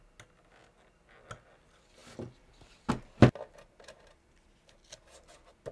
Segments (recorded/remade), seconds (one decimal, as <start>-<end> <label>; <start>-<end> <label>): 0.0-5.7 recorded